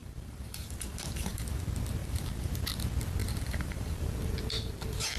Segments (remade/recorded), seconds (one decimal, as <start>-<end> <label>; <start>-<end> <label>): 0.0-1.6 remade; 1.6-2.0 recorded; 2.0-2.6 remade; 2.6-3.2 recorded; 3.2-4.1 remade; 4.1-5.2 recorded